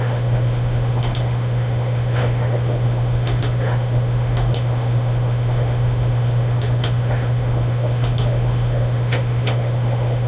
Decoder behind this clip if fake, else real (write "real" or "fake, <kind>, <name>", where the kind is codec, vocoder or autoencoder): fake, autoencoder, DAC-VAE